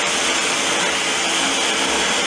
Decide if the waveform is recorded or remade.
recorded